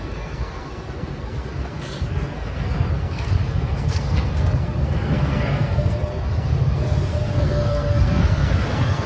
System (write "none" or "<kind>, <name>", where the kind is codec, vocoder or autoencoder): codec, SNAC